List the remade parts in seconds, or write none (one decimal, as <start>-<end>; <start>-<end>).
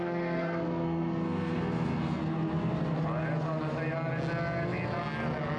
0.0-2.2